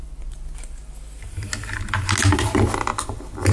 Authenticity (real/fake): real